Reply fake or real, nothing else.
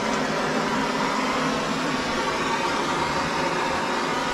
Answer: real